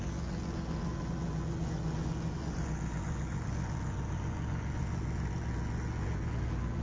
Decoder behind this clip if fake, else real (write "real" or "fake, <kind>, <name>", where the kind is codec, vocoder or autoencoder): fake, vocoder, Vocos